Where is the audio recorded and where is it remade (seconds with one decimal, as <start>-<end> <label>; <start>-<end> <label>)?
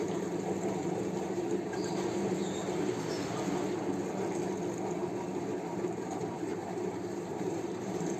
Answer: 0.0-2.4 remade; 2.4-5.6 recorded; 5.6-8.2 remade